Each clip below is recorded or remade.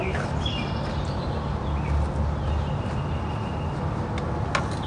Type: recorded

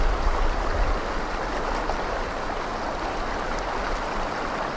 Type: recorded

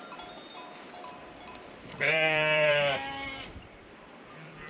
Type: remade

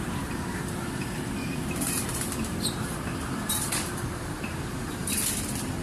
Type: remade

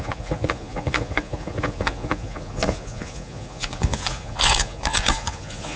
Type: remade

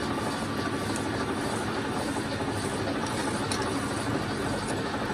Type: recorded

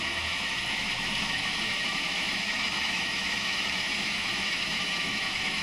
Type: remade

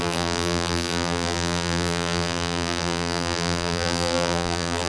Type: remade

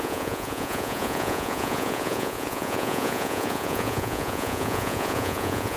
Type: remade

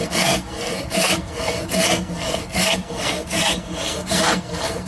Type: remade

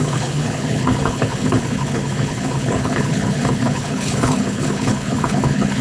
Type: remade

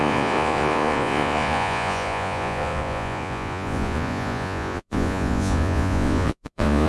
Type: remade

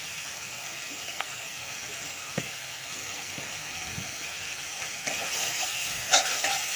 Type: remade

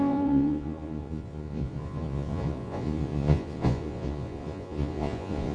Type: remade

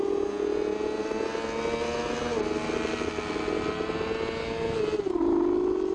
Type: recorded